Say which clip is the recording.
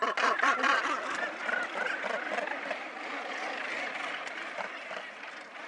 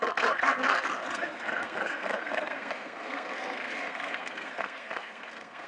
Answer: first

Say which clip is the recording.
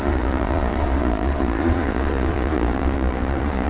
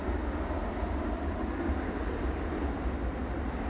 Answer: second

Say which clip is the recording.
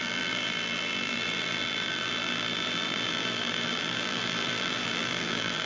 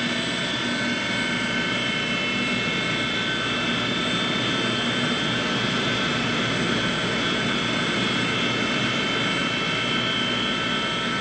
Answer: second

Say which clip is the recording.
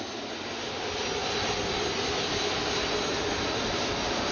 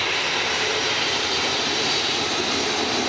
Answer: first